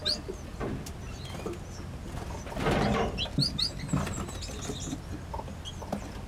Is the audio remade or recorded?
recorded